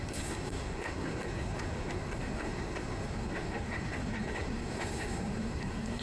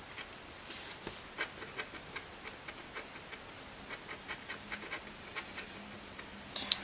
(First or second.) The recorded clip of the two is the second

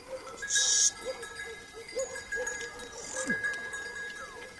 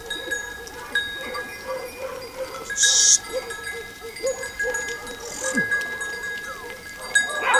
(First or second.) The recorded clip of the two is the second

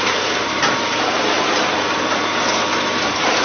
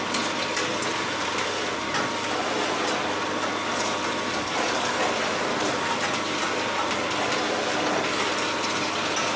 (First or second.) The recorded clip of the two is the second